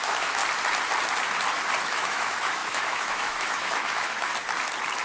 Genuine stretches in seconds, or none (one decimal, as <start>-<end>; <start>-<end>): 0.4-1.8; 4.3-5.0